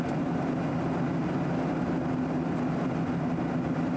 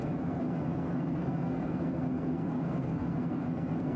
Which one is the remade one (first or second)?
second